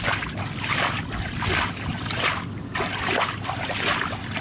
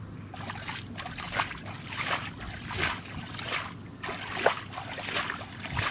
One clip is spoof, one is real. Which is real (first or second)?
second